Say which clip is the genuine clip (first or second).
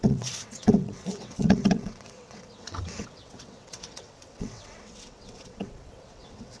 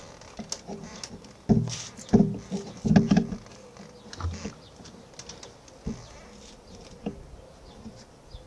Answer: second